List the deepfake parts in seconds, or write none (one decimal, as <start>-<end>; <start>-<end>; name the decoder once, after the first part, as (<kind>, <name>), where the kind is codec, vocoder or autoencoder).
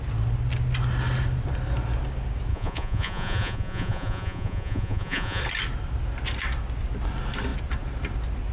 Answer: 2.5-5.4 (vocoder, Vocos)